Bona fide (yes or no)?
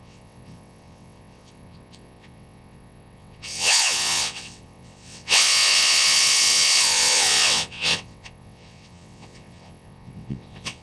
no